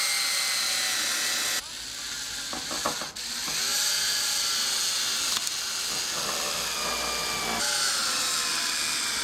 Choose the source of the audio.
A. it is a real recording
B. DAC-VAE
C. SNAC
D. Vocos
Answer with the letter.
A